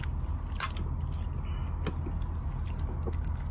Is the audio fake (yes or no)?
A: no